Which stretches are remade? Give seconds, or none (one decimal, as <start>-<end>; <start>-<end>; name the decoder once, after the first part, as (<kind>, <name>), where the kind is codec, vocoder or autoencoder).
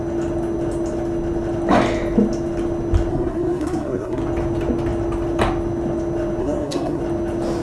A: 3.1-4.2 (codec, SNAC); 6.4-7.0